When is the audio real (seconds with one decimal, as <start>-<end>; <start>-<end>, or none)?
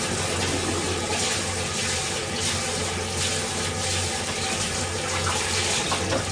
0.0-6.3